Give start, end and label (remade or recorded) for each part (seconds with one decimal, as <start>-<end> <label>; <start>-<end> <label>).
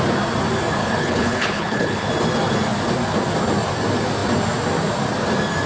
0.0-0.8 recorded; 0.8-2.1 remade; 2.1-5.7 recorded